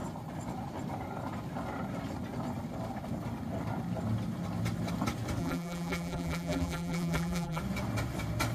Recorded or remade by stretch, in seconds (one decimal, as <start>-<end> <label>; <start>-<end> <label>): 0.0-5.4 recorded; 5.4-7.6 remade; 7.6-8.5 recorded